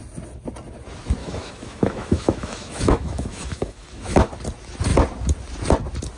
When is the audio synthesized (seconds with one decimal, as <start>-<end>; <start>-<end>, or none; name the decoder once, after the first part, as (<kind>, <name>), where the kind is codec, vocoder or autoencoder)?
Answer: 1.2-4.3 (autoencoder, DAC-VAE)